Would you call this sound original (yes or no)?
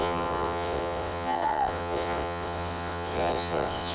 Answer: no